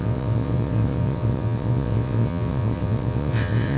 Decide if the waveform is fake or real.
fake